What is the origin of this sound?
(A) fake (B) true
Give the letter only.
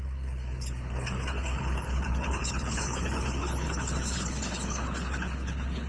A